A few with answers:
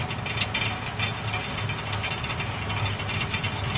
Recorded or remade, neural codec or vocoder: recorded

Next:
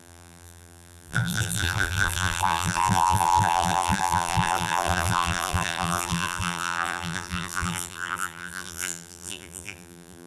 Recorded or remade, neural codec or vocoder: remade, vocoder, BigVGAN v2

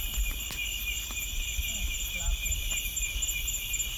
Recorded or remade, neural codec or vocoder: recorded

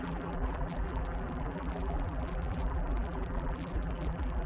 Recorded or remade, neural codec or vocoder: remade, vocoder, BigVGAN v2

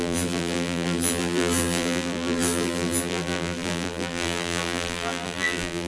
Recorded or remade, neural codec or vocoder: remade, vocoder, BigVGAN v2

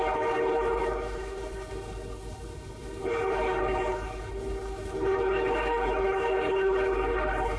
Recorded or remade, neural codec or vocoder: remade, codec, HILCodec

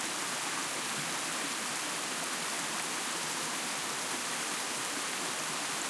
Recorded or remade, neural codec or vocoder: recorded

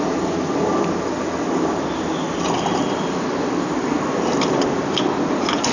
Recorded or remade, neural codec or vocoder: recorded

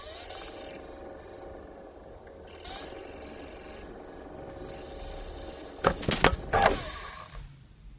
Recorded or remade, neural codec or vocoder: recorded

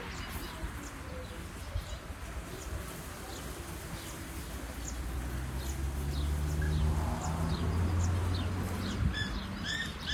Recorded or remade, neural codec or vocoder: recorded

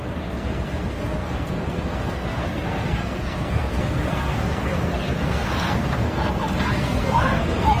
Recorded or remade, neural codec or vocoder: remade, codec, SNAC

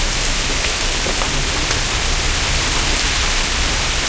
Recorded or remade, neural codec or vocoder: remade, vocoder, BigVGAN v2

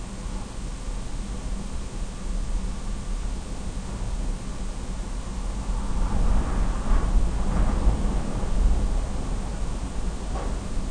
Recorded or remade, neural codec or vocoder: recorded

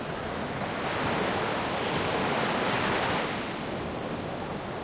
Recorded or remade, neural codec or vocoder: recorded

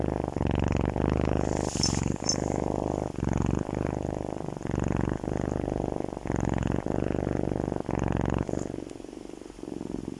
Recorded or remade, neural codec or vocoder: recorded